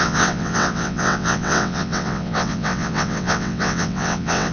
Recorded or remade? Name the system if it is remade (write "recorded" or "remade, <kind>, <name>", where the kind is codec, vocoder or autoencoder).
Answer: remade, vocoder, WaveNeXt